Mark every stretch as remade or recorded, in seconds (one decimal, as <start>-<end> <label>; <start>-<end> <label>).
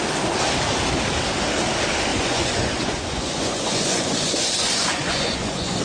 0.0-2.1 recorded; 2.1-5.8 remade